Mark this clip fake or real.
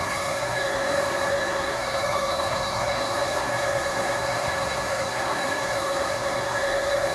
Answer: fake